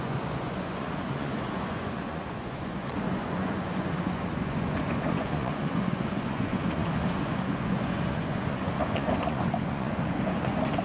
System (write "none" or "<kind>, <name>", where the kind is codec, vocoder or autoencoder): vocoder, Vocos